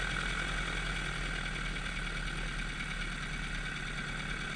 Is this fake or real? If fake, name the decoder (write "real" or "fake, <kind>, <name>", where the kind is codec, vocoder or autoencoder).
real